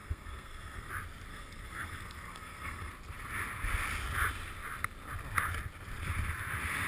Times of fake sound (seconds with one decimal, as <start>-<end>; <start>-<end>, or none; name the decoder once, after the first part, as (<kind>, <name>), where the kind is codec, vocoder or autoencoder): 0.0-0.9 (codec, SNAC); 1.3-2.9

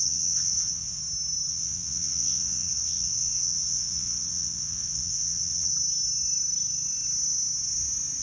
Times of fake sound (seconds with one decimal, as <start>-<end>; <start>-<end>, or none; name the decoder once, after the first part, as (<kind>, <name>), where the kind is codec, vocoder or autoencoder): 0.0-1.0 (vocoder, Vocos); 1.5-5.7

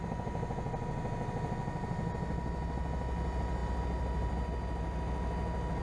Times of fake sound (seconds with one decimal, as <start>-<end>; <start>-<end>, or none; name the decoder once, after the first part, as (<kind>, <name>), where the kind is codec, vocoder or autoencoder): none

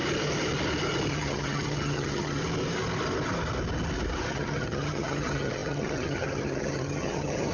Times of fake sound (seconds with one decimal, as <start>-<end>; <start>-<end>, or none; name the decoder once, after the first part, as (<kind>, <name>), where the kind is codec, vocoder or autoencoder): 1.1-2.4 (vocoder, HiFi-GAN); 4.3-7.5

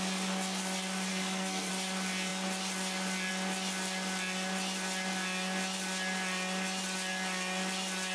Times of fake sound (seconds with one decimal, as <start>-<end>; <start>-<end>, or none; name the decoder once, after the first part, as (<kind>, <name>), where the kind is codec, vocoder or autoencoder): 1.1-1.7 (codec, SNAC)

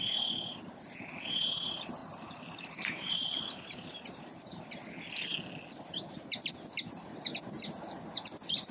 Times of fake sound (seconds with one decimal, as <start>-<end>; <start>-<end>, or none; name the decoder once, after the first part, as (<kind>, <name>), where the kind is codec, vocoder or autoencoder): 2.0-4.7 (vocoder, BigVGAN v2)

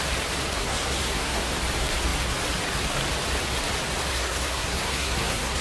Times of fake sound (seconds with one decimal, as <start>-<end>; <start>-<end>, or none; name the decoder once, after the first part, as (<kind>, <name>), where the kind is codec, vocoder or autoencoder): 0.5-1.5 (codec, SNAC); 4.1-5.6